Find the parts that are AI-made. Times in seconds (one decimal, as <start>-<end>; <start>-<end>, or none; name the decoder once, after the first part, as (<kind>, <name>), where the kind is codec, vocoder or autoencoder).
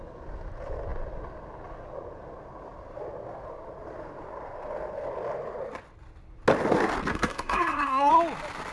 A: 7.1-8.1 (codec, SNAC)